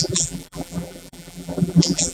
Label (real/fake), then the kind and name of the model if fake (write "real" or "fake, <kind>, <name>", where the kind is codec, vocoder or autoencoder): fake, vocoder, BigVGAN v2